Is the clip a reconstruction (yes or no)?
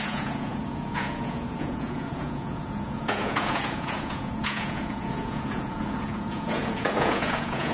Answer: yes